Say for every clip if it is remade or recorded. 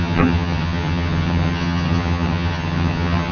remade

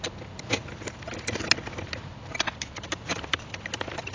recorded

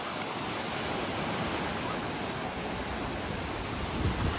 recorded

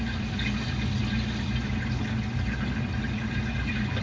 recorded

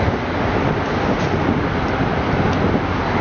recorded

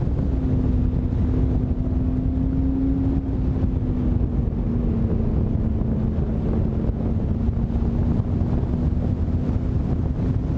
recorded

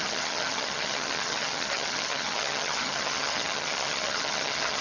remade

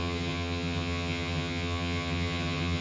remade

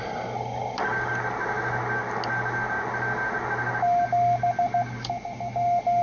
recorded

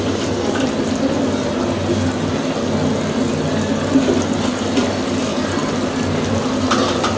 recorded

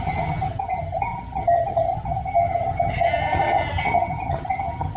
remade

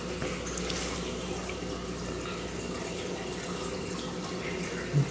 recorded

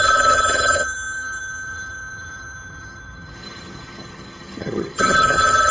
remade